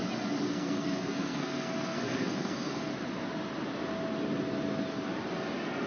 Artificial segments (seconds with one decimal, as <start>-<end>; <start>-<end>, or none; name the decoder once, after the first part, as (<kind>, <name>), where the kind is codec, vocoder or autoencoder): 0.5-2.9 (codec, SNAC)